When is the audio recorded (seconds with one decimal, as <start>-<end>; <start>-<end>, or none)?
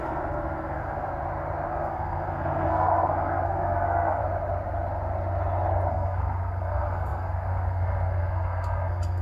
1.1-1.7; 4.2-5.9